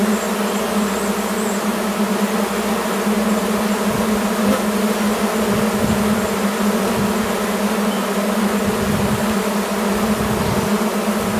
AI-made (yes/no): no